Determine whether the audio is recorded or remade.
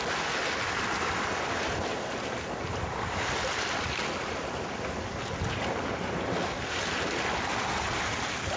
recorded